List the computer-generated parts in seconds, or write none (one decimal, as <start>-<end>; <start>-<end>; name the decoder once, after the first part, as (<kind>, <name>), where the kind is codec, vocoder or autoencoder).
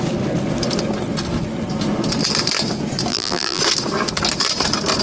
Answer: 3.1-3.6 (vocoder, BigVGAN v2)